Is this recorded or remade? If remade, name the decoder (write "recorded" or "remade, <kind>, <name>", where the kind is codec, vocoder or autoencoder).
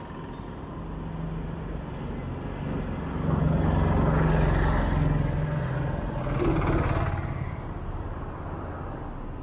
recorded